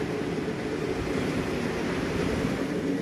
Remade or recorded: recorded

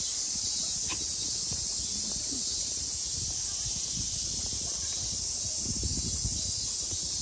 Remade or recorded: recorded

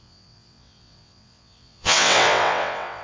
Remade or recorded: remade